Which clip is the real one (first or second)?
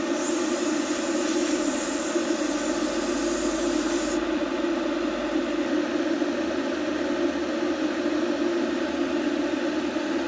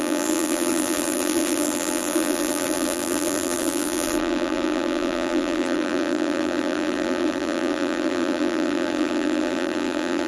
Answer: first